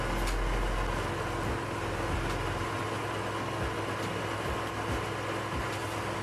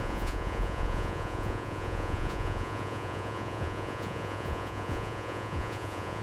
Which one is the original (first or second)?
first